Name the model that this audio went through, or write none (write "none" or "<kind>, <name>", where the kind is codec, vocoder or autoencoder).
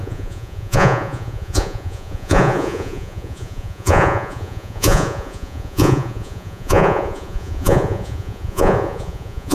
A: vocoder, Vocos